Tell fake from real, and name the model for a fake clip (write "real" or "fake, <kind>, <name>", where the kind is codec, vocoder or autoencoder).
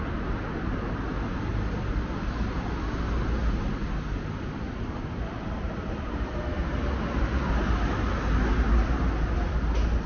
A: real